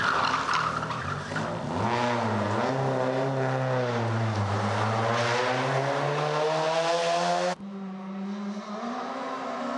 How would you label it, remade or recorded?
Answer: recorded